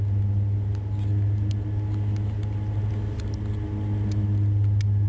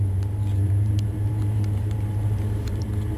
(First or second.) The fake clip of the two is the second